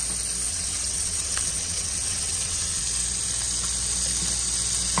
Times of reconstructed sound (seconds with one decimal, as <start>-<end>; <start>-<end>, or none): 0.5-2.8